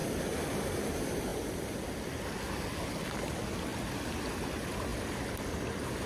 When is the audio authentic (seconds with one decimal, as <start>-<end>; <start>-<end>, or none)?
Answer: 0.0-6.1